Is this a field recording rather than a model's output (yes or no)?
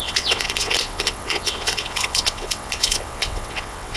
no